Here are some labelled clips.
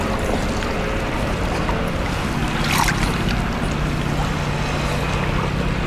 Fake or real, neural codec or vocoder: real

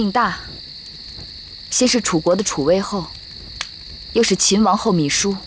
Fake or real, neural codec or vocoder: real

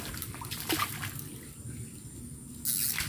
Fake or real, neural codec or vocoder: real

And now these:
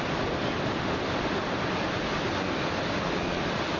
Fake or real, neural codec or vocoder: real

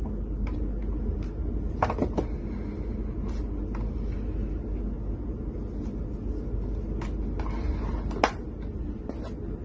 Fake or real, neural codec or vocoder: real